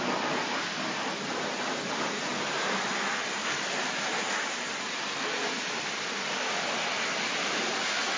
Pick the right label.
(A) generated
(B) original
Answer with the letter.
B